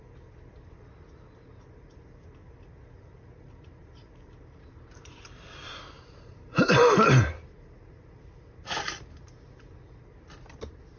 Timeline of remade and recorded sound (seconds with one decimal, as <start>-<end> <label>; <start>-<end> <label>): 0.0-3.0 recorded; 3.0-7.3 remade; 7.3-11.0 recorded